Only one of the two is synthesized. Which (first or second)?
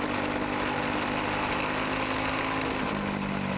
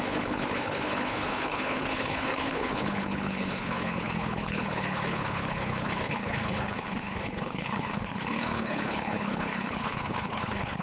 second